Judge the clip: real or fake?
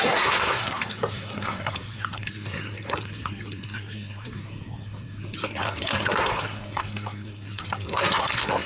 fake